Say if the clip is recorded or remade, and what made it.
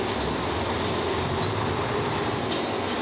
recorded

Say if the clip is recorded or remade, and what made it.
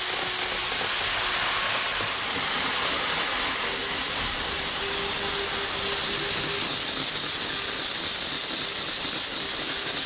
recorded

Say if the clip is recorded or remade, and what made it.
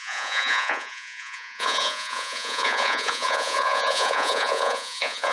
remade, vocoder, Vocos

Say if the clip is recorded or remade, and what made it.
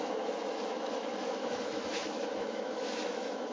remade, autoencoder, DAC-VAE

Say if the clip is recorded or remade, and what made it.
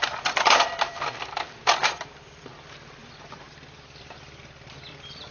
remade, vocoder, BigVGAN v2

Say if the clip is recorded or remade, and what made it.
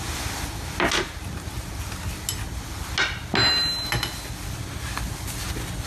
recorded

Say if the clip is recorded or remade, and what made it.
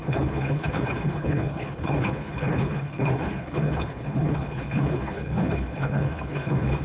remade, codec, HILCodec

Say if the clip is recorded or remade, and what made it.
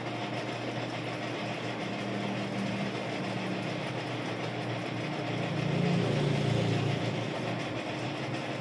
recorded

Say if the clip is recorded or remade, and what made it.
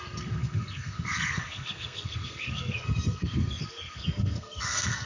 remade, codec, SNAC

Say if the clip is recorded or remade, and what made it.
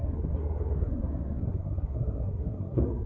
remade, codec, SNAC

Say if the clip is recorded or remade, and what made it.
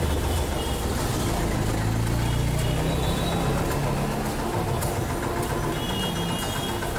recorded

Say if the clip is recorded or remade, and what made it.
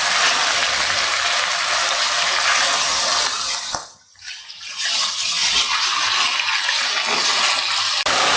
recorded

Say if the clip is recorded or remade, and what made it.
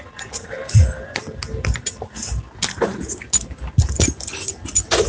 recorded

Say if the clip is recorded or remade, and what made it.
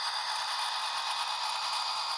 recorded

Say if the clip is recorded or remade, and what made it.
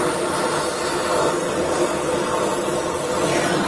recorded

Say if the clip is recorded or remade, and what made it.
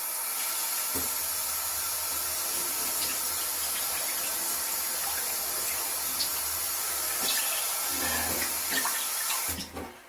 recorded